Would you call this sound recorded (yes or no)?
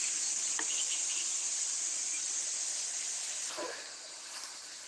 yes